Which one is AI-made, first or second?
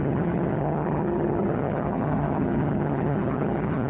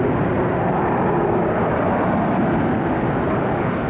first